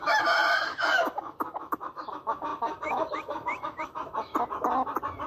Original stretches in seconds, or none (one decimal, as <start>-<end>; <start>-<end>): 4.3-5.3